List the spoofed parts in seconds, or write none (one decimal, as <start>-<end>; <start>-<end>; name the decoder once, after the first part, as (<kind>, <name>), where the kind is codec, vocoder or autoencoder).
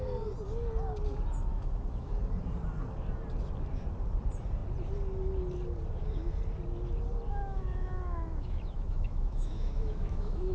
1.5-2.1 (autoencoder, DAC-VAE); 7.3-10.5